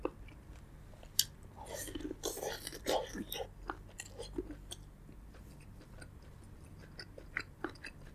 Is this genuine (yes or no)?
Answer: yes